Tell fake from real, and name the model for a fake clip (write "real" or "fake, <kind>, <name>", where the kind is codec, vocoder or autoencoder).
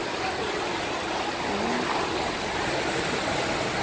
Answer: real